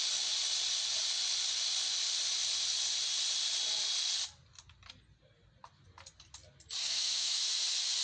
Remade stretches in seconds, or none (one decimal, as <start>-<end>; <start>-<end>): 6.8-7.4